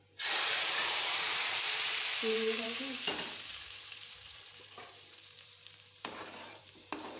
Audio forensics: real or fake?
fake